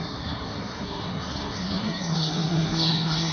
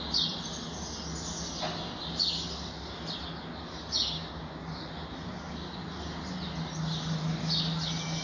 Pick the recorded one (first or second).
second